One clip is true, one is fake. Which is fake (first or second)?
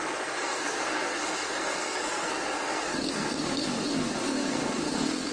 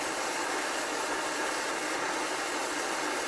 first